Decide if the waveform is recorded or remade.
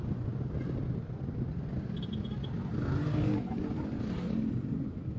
recorded